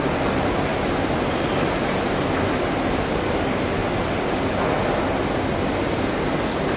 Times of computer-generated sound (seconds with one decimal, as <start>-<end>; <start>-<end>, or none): 3.8-4.4